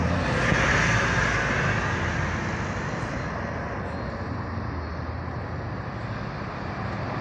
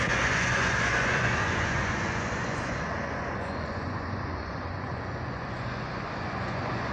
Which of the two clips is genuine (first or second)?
first